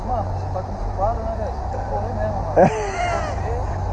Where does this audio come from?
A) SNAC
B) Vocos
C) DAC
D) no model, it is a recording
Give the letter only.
D